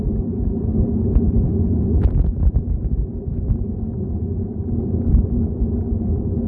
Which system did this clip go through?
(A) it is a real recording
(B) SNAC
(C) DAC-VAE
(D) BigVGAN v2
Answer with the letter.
A